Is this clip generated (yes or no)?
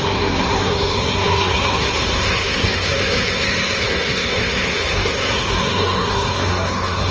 yes